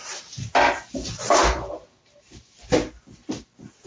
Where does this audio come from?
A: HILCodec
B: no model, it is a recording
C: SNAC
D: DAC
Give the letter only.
B